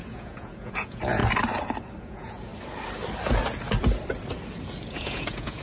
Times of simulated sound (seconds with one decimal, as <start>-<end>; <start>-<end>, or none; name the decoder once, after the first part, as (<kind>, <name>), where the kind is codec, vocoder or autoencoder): 0.0-1.2 (vocoder, Vocos); 2.0-2.5; 4.9-5.6